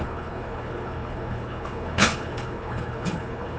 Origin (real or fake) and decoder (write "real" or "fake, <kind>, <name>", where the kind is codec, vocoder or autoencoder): fake, codec, HILCodec